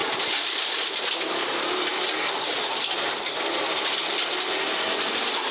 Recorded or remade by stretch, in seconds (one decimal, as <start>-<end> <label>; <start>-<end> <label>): 0.0-1.9 remade; 1.9-5.5 recorded